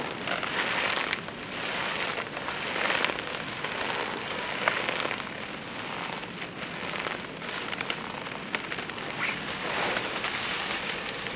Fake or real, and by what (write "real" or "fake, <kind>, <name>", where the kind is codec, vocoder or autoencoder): real